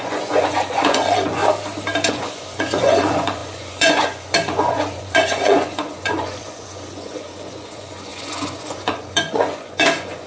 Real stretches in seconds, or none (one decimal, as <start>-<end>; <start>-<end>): 1.4-2.1